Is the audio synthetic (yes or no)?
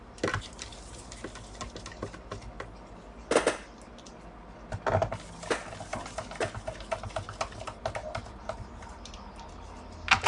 no